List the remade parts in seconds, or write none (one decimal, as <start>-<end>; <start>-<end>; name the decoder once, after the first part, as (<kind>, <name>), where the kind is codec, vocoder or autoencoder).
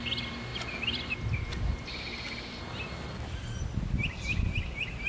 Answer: 0.5-3.6 (vocoder, BigVGAN v2)